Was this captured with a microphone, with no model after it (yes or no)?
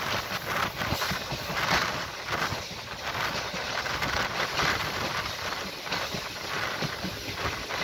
yes